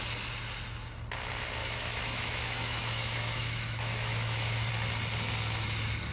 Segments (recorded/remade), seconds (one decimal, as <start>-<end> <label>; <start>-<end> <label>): 0.0-1.6 recorded; 1.6-4.7 remade; 4.7-6.1 recorded